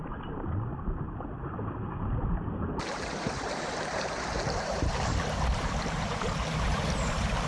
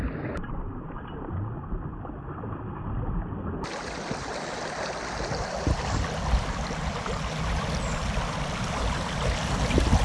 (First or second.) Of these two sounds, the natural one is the second